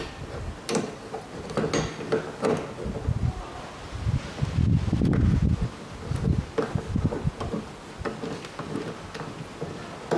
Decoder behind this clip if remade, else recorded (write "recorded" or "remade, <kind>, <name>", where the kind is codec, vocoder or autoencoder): recorded